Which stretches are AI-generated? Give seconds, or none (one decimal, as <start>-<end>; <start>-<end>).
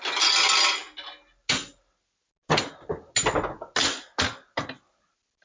none